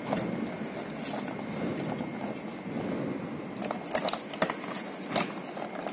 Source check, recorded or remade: recorded